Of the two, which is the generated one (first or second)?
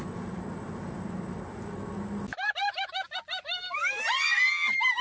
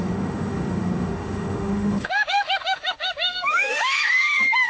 second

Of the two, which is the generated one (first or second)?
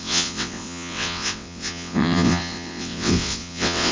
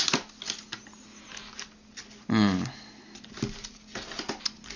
first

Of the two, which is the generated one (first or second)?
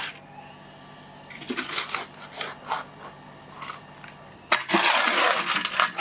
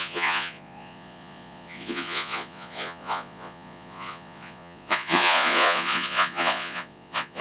second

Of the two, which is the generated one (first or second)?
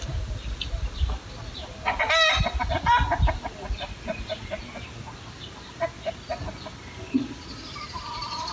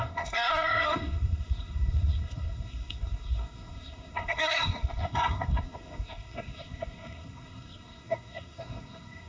second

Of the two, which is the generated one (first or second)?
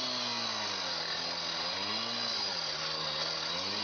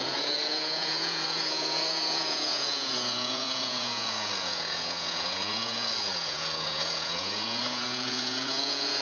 second